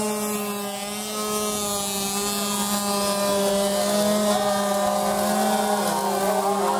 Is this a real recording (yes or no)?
yes